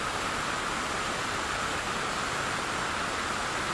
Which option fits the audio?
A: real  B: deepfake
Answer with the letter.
A